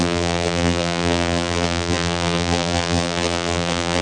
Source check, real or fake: fake